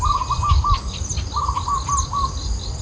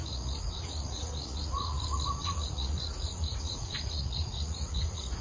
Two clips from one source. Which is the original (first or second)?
first